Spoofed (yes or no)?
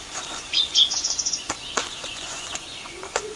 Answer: yes